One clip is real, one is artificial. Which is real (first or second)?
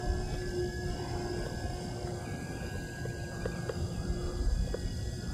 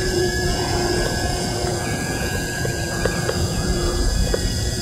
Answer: first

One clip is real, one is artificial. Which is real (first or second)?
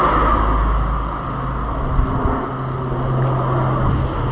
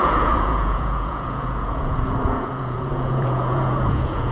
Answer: first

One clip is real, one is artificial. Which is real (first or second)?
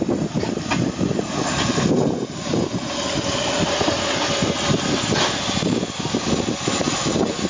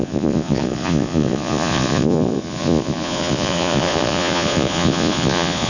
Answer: first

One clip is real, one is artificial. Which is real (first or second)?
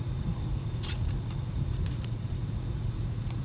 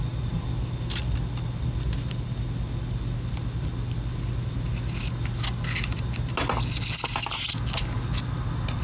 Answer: second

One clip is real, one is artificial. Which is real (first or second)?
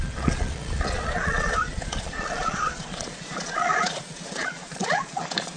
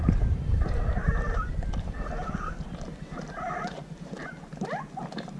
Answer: second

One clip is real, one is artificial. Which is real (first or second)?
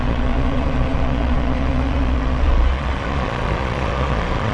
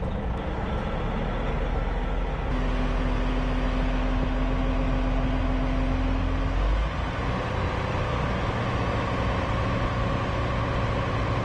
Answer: second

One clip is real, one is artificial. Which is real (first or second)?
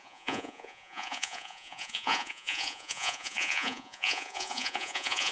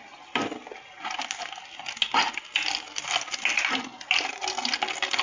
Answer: second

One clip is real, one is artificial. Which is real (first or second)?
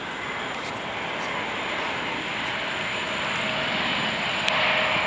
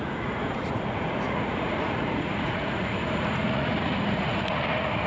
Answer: first